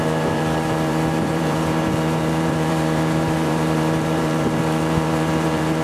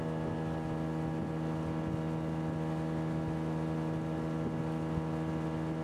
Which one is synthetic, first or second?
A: first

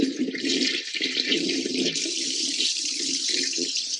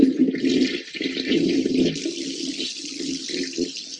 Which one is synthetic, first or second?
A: first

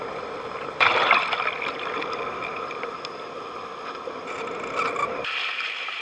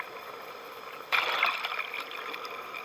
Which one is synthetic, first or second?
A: second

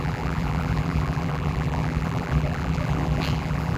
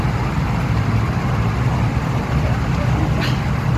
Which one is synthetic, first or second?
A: first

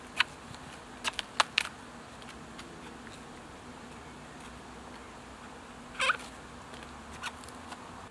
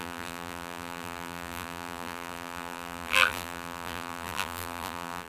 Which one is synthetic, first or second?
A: second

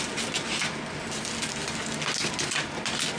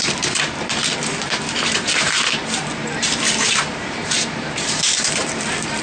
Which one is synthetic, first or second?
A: second